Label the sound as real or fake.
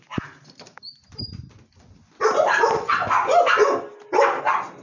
real